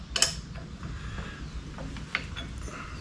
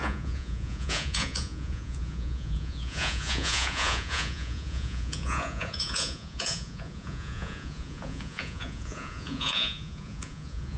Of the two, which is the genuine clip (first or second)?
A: first